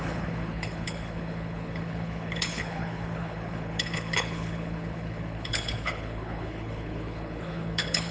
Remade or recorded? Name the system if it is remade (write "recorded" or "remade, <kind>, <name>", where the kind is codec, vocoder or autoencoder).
remade, codec, HILCodec